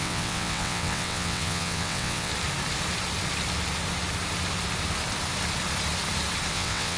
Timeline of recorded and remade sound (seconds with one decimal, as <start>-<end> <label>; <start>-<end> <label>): 0.0-2.3 remade; 2.3-6.5 recorded; 6.5-7.0 remade